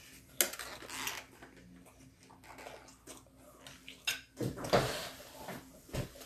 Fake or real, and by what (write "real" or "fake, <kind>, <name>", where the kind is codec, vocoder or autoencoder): real